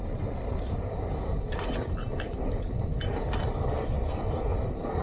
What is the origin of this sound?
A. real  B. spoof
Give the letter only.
A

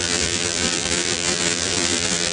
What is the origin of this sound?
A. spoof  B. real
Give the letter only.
A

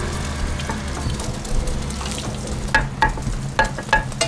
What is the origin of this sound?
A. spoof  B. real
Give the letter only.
B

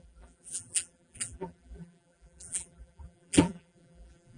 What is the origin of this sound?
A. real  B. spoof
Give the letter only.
B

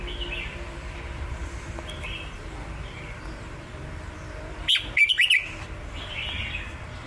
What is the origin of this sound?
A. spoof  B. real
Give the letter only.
A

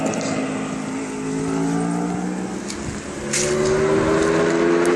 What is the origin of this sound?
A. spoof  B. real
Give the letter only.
B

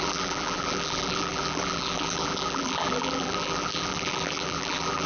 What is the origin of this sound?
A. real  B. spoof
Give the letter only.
B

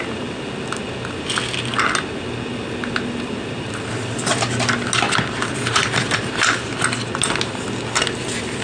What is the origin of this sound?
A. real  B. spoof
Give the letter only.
A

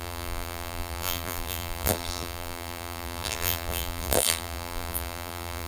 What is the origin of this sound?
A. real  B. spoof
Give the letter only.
B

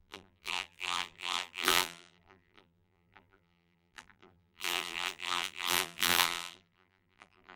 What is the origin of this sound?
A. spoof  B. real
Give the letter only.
A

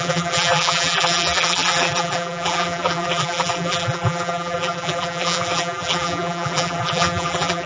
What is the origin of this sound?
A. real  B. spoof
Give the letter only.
B